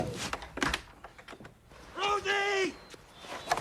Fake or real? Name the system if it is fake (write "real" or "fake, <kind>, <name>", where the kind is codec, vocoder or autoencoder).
real